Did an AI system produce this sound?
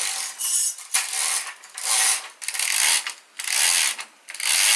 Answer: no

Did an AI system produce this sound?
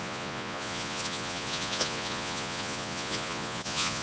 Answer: yes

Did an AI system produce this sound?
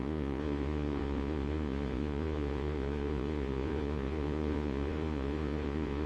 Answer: yes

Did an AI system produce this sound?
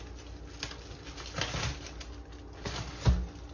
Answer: no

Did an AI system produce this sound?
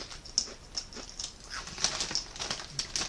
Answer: no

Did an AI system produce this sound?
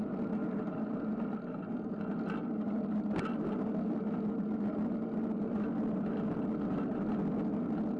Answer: no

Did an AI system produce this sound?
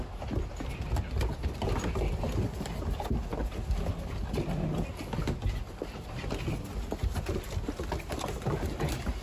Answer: no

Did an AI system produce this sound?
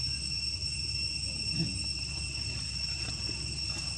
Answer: no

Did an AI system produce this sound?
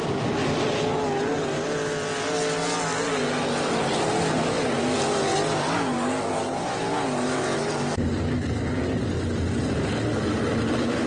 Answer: no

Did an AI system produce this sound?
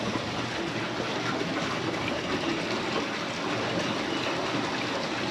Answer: no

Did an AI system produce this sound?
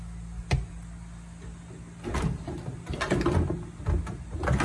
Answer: no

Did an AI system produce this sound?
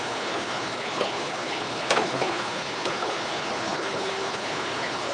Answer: yes